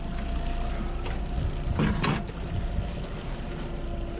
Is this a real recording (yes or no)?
yes